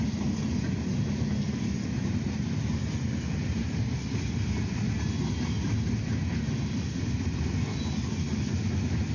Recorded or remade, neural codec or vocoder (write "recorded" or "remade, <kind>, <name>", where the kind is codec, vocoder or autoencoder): recorded